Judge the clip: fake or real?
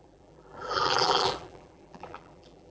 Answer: fake